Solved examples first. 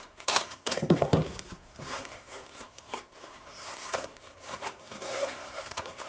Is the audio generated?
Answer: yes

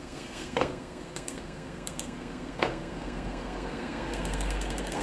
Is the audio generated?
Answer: yes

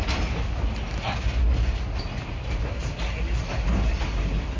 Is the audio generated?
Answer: no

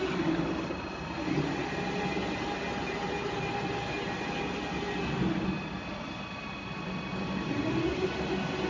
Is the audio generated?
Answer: no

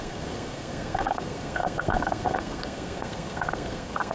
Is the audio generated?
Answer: yes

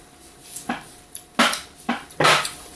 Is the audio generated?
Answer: no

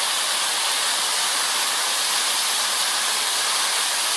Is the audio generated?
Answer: no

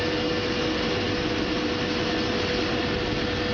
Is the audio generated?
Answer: no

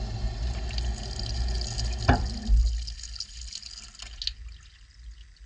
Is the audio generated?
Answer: no